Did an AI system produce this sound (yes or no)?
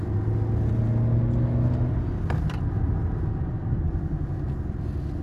no